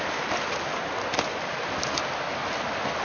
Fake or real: real